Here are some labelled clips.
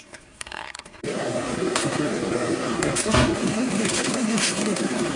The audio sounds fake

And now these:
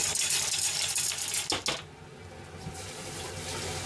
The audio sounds real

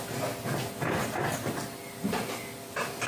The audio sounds real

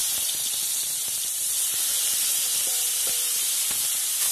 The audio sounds real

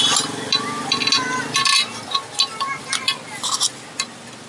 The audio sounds real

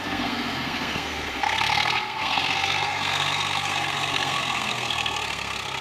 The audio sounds fake